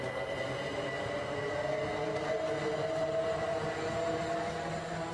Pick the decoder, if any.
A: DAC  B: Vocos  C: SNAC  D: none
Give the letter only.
D